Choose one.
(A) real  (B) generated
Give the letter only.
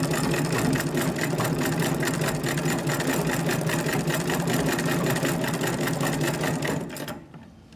A